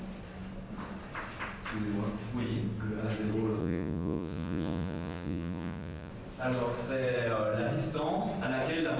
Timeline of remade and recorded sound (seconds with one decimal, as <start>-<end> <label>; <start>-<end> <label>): 0.0-3.6 recorded; 3.6-6.1 remade; 6.1-9.0 recorded